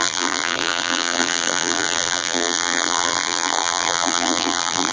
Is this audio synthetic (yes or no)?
yes